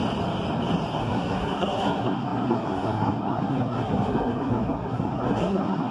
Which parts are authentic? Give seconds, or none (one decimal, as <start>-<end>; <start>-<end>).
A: 0.0-1.0